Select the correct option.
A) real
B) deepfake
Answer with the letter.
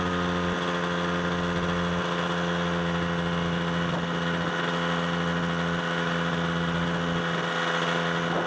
A